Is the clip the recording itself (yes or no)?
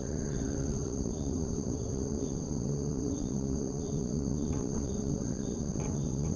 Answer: no